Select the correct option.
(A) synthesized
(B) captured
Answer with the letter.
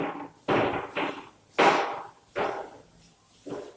B